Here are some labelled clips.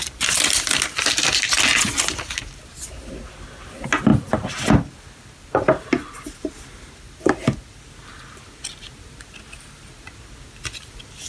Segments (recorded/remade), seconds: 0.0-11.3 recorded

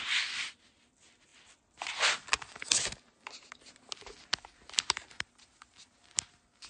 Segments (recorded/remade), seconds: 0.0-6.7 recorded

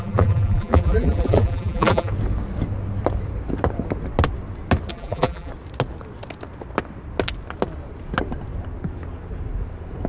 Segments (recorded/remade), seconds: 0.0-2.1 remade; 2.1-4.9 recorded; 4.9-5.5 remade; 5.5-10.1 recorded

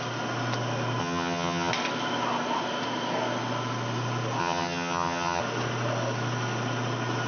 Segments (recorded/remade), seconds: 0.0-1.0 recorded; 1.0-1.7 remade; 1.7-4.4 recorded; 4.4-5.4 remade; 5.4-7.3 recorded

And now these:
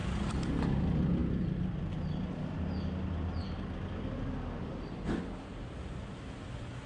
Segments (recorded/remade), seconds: 0.0-0.6 remade; 0.6-6.9 recorded

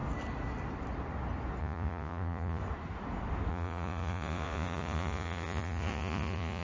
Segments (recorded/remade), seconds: 0.0-1.6 recorded; 1.6-2.6 remade; 2.6-3.5 recorded; 3.5-6.6 remade